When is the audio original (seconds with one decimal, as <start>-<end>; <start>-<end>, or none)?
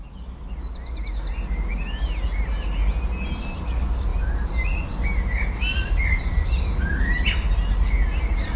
0.0-8.6